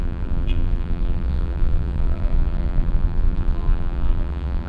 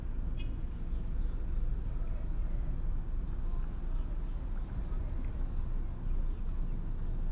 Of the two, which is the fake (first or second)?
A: first